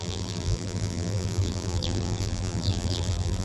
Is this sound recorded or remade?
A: remade